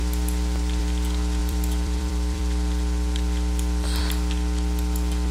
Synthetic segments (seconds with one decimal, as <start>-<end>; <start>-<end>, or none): 1.4-4.0